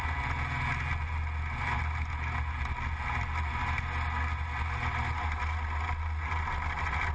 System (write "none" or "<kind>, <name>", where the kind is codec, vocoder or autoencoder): none